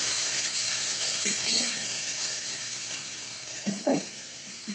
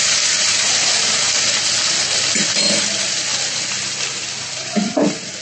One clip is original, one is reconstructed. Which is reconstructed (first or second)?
first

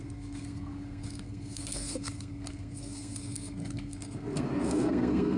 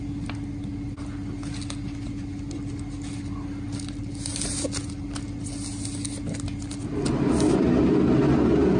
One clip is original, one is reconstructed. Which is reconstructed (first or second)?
first